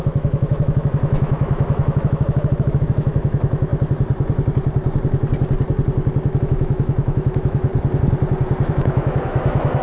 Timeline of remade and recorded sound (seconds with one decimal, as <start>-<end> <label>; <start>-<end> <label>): 0.0-3.7 remade; 3.7-6.4 recorded; 6.4-7.7 remade; 7.7-8.7 recorded; 8.7-9.8 remade